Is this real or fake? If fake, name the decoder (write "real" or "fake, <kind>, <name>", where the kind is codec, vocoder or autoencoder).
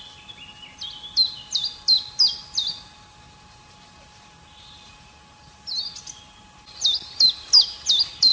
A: real